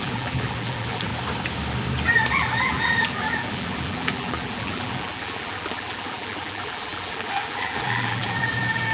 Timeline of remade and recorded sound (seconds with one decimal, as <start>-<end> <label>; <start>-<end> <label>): 0.0-1.1 remade; 1.1-2.3 recorded; 2.3-8.9 remade